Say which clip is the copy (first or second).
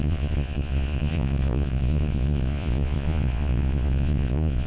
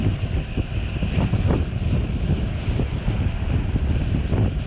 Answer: first